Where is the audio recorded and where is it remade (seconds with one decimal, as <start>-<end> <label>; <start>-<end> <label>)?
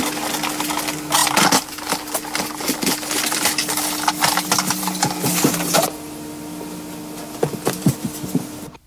0.0-8.9 recorded